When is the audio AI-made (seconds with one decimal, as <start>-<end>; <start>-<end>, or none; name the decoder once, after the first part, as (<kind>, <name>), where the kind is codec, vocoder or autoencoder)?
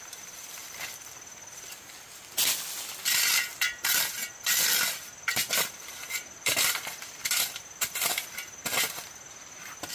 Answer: 0.0-8.6 (vocoder, BigVGAN v2)